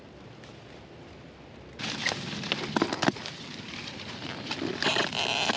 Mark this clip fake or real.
real